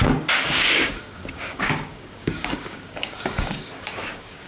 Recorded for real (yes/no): no